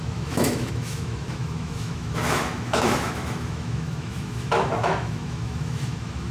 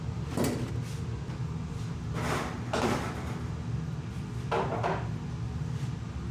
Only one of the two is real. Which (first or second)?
second